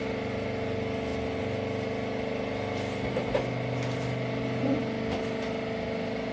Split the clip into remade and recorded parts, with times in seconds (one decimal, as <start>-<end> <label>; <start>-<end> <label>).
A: 0.0-6.3 recorded